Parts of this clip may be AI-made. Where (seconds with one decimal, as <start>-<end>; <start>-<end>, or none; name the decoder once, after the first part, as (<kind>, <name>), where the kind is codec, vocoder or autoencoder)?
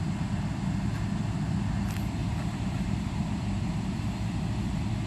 2.2-4.4 (vocoder, BigVGAN v2)